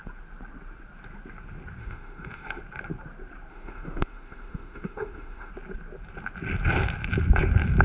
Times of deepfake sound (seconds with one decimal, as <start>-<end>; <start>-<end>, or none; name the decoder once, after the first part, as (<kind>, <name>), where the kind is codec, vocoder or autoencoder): 1.8-2.6 (autoencoder, DAC-VAE); 3.5-5.5